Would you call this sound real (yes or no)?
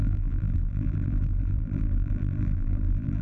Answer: no